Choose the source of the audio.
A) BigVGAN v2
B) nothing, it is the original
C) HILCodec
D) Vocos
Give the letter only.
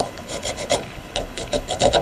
C